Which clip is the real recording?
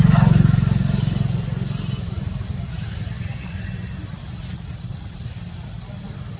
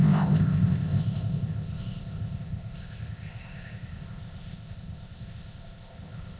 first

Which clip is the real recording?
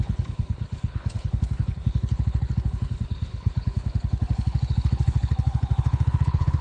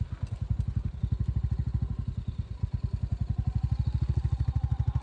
second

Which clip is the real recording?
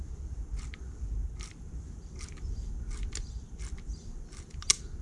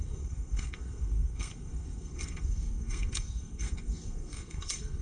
first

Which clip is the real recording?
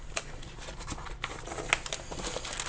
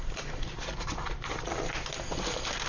first